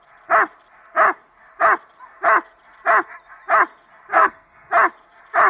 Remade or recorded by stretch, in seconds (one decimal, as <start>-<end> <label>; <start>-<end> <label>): 0.0-4.1 recorded; 4.1-4.7 remade; 4.7-5.5 recorded